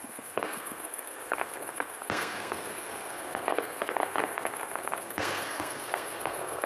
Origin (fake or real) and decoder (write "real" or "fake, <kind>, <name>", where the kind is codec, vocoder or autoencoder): fake, codec, SNAC